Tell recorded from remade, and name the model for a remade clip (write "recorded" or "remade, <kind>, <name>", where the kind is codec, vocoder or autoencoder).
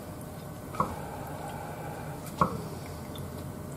remade, vocoder, BigVGAN v2